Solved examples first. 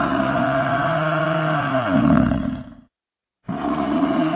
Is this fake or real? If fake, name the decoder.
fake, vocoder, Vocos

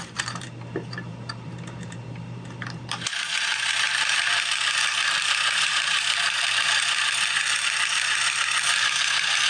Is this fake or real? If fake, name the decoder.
fake, vocoder, BigVGAN v2